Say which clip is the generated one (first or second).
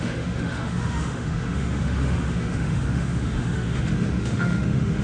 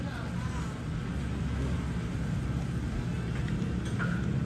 first